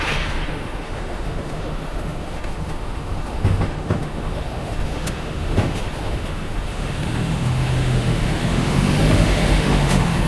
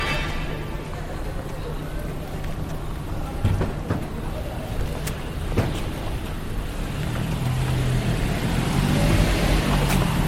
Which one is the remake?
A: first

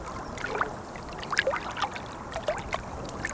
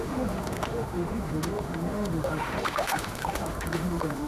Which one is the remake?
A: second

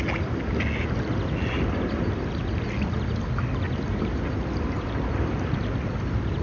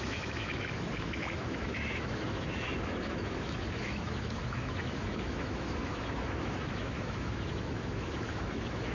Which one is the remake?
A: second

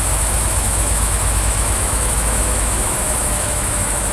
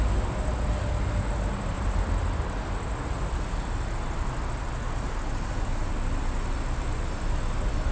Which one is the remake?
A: first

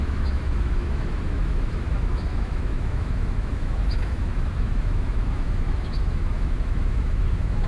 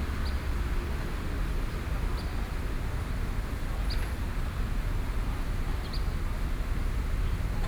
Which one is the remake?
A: first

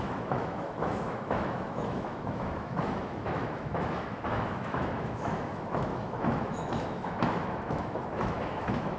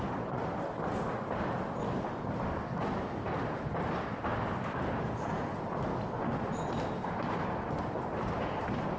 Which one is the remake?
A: first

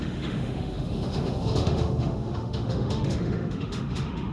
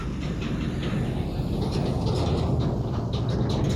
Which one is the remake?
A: first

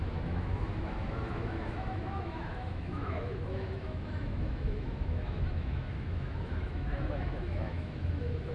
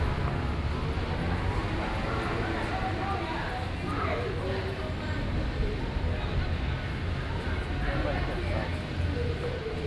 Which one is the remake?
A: first